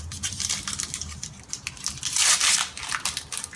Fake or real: real